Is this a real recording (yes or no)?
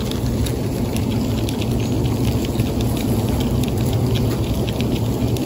yes